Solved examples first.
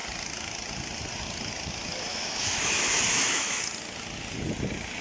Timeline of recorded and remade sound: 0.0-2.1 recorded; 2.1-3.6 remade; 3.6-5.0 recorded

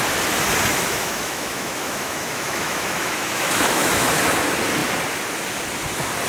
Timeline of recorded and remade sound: 0.0-0.7 recorded; 0.7-4.1 remade; 4.1-6.3 recorded

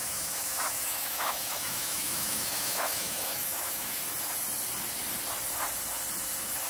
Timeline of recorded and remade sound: 0.0-4.0 remade; 4.0-6.7 recorded

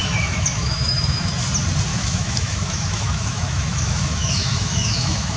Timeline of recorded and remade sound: 0.0-1.3 remade; 1.3-1.9 recorded; 1.9-5.4 remade

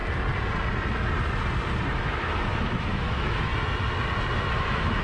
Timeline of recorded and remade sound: 0.0-1.9 recorded; 1.9-3.5 remade; 3.5-4.5 recorded; 4.5-5.0 remade

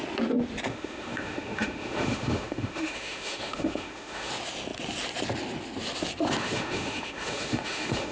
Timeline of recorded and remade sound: 0.0-0.7 recorded; 0.7-4.3 remade; 4.3-6.4 recorded; 6.4-8.1 remade

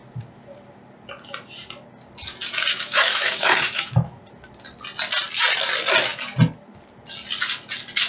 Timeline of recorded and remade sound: 0.0-2.7 recorded; 2.7-4.2 remade; 4.2-8.1 recorded

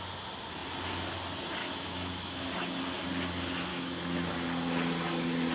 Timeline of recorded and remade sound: 0.0-1.6 recorded; 1.6-2.5 remade; 2.5-3.7 recorded; 3.7-4.3 remade; 4.3-5.5 recorded